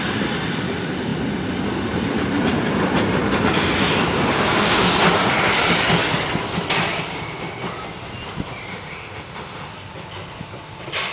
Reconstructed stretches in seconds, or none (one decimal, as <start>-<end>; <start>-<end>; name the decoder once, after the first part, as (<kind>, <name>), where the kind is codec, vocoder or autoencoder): 8.7-9.7 (autoencoder, DAC-VAE)